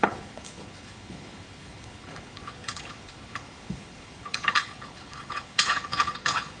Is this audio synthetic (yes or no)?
yes